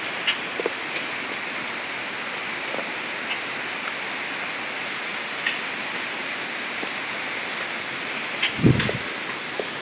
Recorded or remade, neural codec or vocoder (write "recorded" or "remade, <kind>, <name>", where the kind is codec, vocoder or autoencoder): recorded